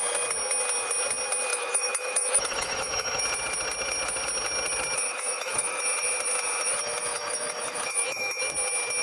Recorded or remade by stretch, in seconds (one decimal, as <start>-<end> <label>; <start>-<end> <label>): 0.0-1.5 recorded; 1.5-3.2 remade; 3.2-5.1 recorded; 5.1-5.8 remade; 5.8-7.1 recorded; 7.1-8.4 remade; 8.4-9.0 recorded